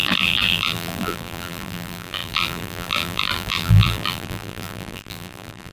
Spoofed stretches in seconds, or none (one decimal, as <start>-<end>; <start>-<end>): 0.0-5.7